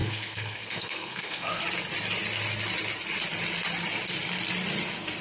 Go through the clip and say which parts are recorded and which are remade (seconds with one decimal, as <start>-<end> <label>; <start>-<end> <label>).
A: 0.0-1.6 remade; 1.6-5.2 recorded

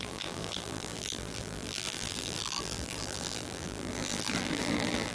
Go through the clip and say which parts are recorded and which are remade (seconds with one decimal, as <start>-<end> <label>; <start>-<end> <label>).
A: 0.0-5.1 remade

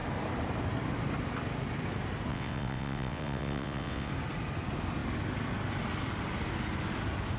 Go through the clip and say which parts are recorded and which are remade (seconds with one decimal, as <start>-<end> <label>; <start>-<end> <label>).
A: 0.0-2.3 recorded; 2.3-4.1 remade; 4.1-7.4 recorded

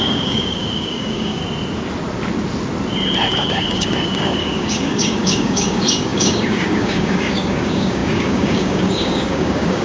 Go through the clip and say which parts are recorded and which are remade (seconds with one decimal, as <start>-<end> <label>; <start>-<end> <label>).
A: 0.0-1.4 remade; 1.4-3.3 recorded; 3.3-9.8 remade